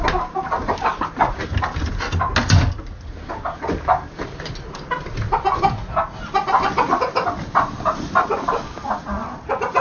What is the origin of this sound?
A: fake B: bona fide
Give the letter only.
B